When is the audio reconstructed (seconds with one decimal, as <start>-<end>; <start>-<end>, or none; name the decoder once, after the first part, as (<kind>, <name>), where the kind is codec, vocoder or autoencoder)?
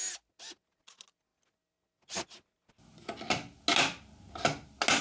none